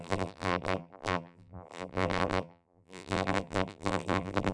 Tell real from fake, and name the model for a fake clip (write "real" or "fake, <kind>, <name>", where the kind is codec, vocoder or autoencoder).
fake, vocoder, BigVGAN v2